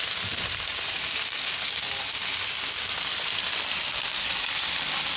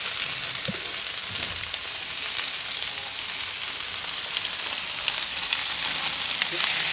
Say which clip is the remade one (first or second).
first